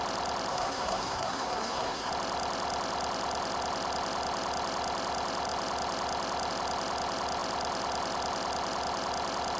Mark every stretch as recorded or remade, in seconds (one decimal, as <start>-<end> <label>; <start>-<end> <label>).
0.0-0.5 recorded; 0.5-2.1 remade; 2.1-9.6 recorded